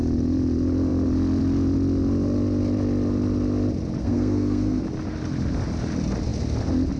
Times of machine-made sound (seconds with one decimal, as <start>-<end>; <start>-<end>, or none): 4.0-4.8